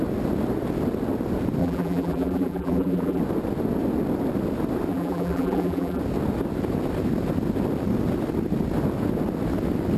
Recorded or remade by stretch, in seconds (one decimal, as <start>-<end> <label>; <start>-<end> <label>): 0.0-1.6 recorded; 1.6-3.2 remade; 3.2-4.9 recorded; 4.9-6.0 remade; 6.0-10.0 recorded